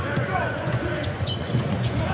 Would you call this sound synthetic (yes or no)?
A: yes